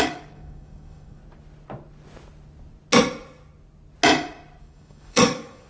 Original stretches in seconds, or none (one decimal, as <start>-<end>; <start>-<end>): 1.2-4.6